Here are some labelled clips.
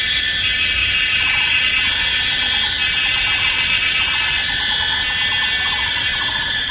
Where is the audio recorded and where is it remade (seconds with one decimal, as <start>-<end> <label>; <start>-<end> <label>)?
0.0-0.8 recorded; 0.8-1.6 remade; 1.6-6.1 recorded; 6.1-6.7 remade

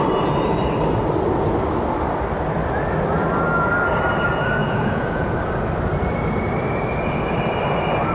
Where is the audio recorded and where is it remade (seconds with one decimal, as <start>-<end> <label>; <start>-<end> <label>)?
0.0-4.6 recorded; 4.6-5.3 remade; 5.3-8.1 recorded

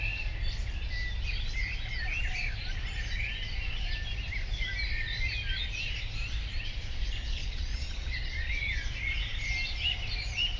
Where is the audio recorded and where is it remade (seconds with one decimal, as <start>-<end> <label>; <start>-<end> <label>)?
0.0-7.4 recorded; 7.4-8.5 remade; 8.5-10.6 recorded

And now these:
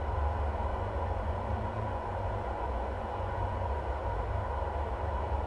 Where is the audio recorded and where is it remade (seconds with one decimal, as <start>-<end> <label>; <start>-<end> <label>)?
0.0-0.7 recorded; 0.7-3.8 remade; 3.8-5.5 recorded

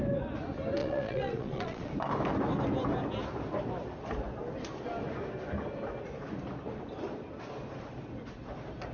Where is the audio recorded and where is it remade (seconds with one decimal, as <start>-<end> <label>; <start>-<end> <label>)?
0.0-0.8 recorded; 0.8-1.9 remade; 1.9-8.9 recorded

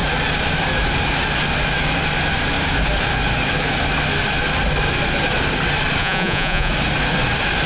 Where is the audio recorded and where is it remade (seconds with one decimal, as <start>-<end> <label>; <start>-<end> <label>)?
0.0-6.0 recorded; 6.0-6.7 remade; 6.7-7.7 recorded

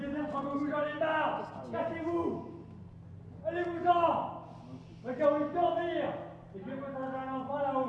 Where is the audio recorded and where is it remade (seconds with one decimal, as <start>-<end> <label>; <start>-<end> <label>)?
0.0-3.4 recorded; 3.4-4.3 remade; 4.3-7.9 recorded